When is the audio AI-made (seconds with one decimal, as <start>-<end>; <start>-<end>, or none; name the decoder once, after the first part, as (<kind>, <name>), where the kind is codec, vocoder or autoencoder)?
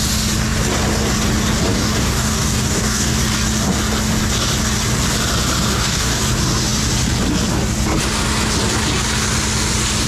1.7-3.2 (codec, DAC); 5.7-6.2